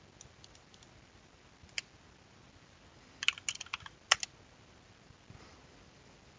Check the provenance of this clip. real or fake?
real